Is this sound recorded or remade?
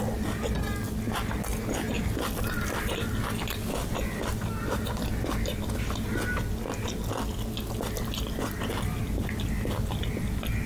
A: recorded